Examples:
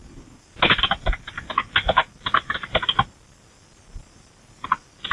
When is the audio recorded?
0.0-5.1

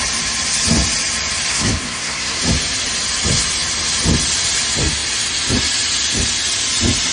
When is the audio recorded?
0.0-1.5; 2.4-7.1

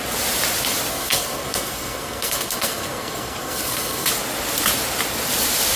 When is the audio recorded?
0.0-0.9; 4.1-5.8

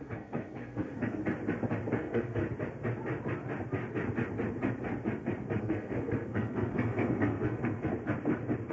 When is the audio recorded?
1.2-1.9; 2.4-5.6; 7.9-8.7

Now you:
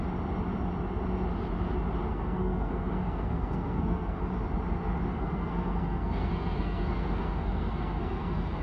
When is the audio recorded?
0.0-2.1; 4.2-5.1

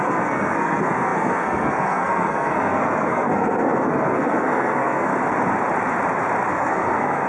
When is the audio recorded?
5.1-6.5

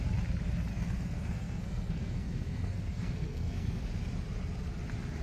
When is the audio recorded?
0.0-0.7; 3.8-5.2